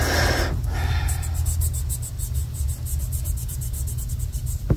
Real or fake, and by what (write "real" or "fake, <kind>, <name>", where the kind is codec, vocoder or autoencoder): real